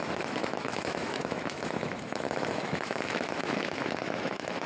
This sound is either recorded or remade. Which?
remade